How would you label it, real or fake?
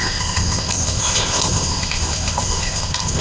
fake